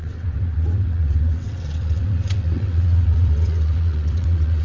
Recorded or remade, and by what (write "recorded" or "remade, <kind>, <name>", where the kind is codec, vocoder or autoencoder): remade, vocoder, WaveNeXt